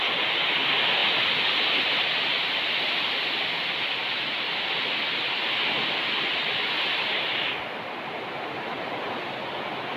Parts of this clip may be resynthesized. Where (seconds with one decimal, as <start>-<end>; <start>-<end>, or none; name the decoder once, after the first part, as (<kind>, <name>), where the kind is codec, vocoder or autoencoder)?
none